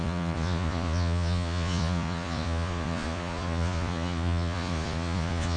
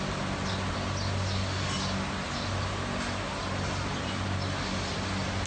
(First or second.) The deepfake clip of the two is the first